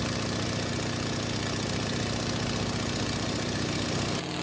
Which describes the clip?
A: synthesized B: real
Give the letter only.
B